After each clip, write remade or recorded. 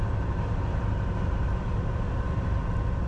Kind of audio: recorded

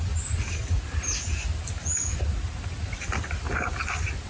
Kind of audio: recorded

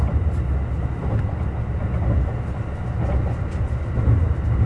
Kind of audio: recorded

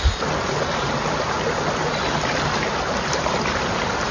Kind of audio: recorded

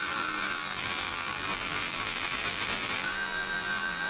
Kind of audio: remade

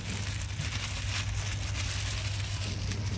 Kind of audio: recorded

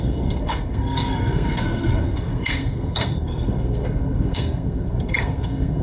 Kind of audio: remade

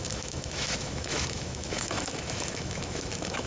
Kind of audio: remade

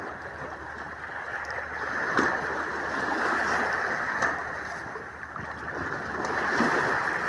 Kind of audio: recorded